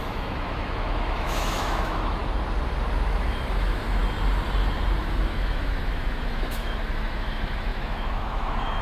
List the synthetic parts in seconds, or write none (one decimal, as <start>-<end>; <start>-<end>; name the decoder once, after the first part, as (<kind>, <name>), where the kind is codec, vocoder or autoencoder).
0.0-2.2 (autoencoder, DAC-VAE); 3.1-4.0; 5.0-8.8

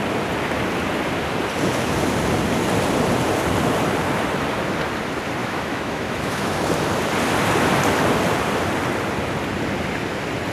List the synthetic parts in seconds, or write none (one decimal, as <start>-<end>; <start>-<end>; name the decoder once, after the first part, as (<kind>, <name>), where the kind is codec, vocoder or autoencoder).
5.4-6.7 (autoencoder, DAC-VAE)

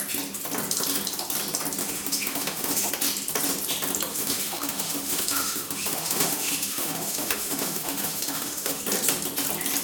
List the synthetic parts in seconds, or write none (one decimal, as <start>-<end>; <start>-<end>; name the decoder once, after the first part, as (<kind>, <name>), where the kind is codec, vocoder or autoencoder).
1.8-2.9 (autoencoder, DAC-VAE); 4.1-8.8

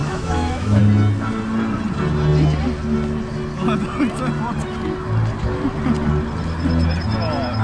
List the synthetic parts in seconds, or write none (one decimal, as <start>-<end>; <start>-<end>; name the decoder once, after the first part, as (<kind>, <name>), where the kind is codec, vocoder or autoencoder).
0.0-0.8 (autoencoder, DAC-VAE)